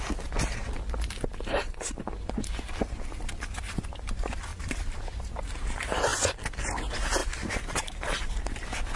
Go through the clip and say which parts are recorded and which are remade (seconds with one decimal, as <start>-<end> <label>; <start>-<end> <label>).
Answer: 0.0-4.5 recorded; 4.5-5.3 remade; 5.3-7.2 recorded; 7.2-8.4 remade; 8.4-9.0 recorded